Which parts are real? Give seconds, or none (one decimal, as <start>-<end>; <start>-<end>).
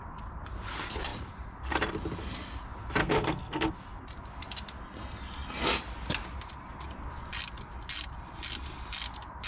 0.0-3.0; 3.7-9.5